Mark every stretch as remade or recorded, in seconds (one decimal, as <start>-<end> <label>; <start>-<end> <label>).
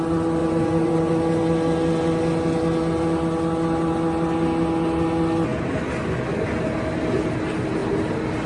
0.0-0.4 recorded; 0.4-1.1 remade; 1.1-8.5 recorded